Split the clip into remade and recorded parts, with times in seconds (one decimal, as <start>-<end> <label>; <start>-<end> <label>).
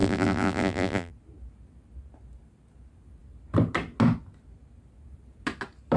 0.0-1.1 remade; 1.1-6.0 recorded